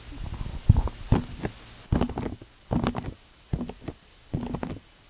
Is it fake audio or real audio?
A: real